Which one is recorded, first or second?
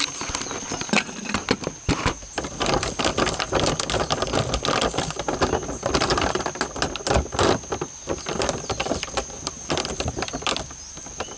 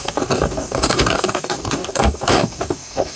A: first